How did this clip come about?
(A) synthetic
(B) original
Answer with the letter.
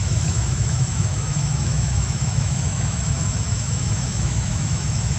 A